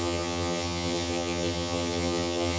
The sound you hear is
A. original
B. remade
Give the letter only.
B